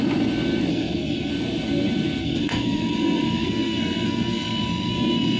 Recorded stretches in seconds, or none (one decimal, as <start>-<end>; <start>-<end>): 0.0-0.7; 1.3-2.2